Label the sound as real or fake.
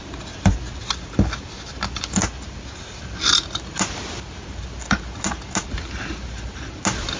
real